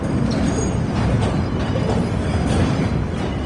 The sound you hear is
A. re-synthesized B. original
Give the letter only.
B